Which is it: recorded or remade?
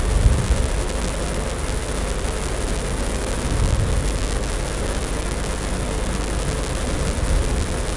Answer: recorded